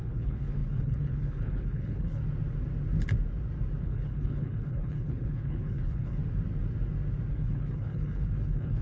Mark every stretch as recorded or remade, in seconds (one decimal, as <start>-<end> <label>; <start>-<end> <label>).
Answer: 0.0-2.2 remade; 2.2-3.8 recorded; 3.8-6.2 remade; 6.2-7.3 recorded; 7.3-8.8 remade